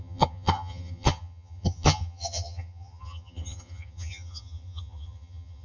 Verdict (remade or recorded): remade